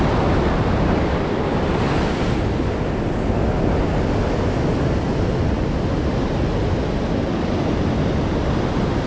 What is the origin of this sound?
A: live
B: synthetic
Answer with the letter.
A